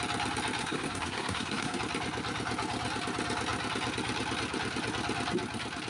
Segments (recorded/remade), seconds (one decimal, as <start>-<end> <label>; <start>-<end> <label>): 0.0-0.6 recorded; 0.6-1.8 remade; 1.8-5.9 recorded